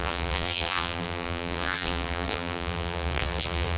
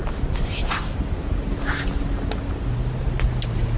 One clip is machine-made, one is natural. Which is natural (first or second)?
second